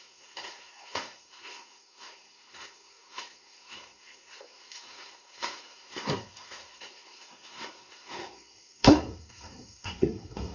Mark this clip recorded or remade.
remade